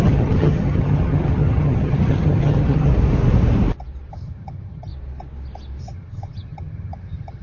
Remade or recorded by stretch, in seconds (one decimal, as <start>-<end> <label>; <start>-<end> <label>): 0.0-2.9 remade; 2.9-4.1 recorded; 4.1-4.9 remade; 4.9-5.8 recorded; 5.8-7.4 remade